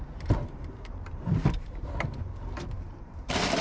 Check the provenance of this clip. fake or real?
fake